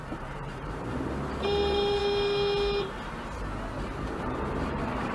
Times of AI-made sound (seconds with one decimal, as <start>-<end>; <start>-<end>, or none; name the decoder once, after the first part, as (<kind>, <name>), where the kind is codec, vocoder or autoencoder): 0.0-2.0 (vocoder, BigVGAN v2); 4.0-5.1